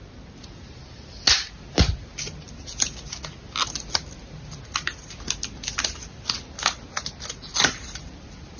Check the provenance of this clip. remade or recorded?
recorded